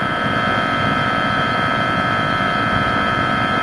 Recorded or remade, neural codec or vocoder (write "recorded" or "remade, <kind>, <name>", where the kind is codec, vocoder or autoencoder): remade, vocoder, Vocos